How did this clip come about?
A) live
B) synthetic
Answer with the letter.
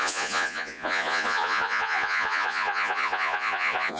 B